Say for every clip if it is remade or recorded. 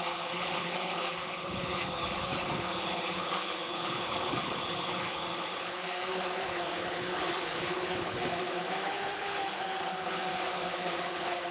remade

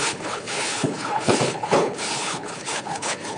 remade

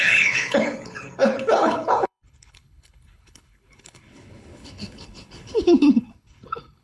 remade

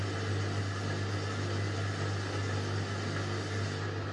recorded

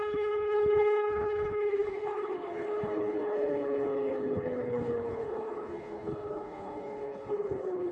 remade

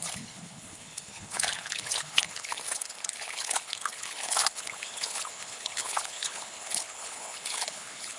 remade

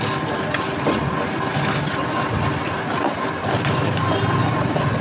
recorded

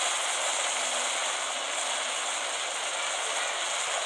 recorded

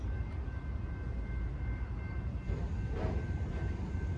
recorded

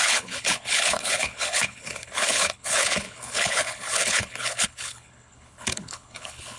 remade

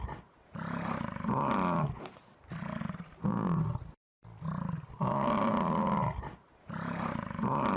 recorded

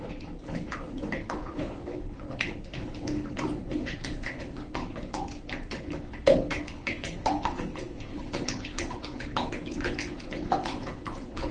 remade